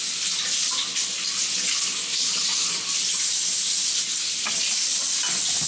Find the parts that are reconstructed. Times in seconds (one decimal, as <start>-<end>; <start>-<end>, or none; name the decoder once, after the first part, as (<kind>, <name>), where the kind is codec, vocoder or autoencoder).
none